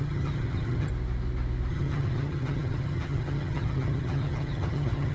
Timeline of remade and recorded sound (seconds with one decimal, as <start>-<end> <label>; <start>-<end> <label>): 0.0-0.9 remade; 0.9-1.7 recorded; 1.7-5.1 remade